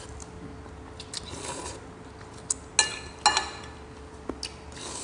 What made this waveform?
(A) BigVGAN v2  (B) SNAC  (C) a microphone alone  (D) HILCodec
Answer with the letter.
C